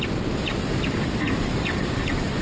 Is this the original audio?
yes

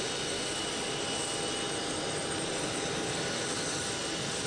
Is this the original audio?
yes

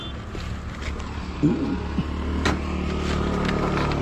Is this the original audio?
yes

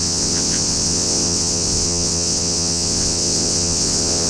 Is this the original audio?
no